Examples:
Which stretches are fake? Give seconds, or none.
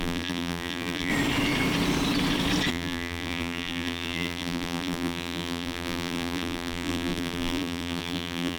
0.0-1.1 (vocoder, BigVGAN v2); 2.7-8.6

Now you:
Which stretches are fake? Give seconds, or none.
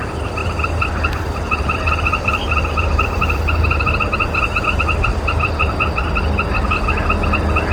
0.4-3.9 (vocoder, BigVGAN v2); 5.1-5.8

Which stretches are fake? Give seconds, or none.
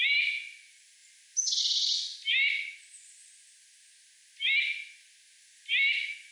none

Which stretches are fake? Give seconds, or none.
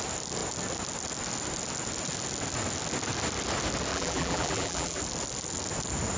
3.9-5.0 (vocoder, BigVGAN v2)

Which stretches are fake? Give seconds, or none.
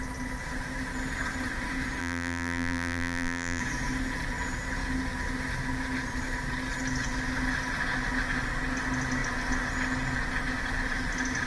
2.0-3.6 (vocoder, BigVGAN v2)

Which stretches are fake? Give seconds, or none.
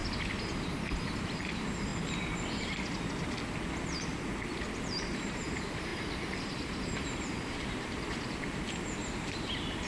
0.9-1.9 (vocoder, BigVGAN v2); 4.8-9.9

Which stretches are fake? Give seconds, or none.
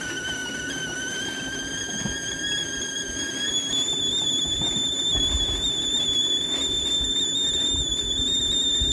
0.4-1.9 (vocoder, BigVGAN v2)